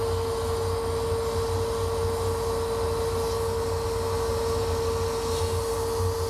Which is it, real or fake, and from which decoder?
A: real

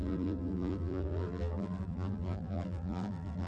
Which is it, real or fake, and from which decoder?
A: fake, vocoder, BigVGAN v2